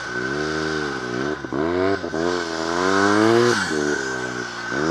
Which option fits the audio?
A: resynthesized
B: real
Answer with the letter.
B